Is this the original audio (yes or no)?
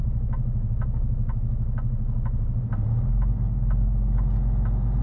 yes